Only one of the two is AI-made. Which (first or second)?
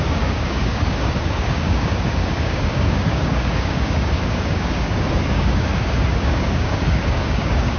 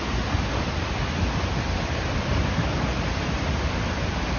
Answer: first